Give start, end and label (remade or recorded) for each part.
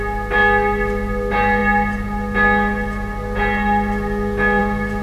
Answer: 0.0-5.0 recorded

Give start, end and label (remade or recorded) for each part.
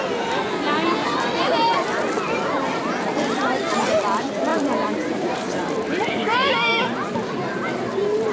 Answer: 0.0-4.5 recorded; 4.5-6.5 remade; 6.5-8.3 recorded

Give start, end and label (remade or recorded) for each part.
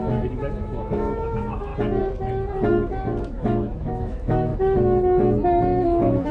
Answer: 0.0-1.7 remade; 1.7-3.2 recorded; 3.2-4.5 remade; 4.5-5.8 recorded; 5.8-6.3 remade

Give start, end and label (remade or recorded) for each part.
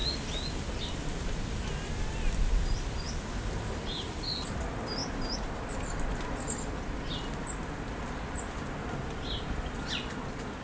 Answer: 0.0-10.6 recorded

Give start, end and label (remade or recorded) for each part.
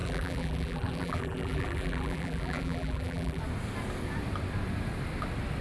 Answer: 0.0-3.4 remade; 3.4-5.6 recorded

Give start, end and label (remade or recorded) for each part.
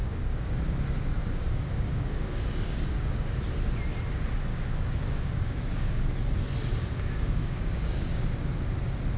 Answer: 0.0-0.6 remade; 0.6-1.2 recorded; 1.2-3.4 remade; 3.4-4.5 recorded; 4.5-6.0 remade; 6.0-6.7 recorded; 6.7-8.2 remade; 8.2-9.2 recorded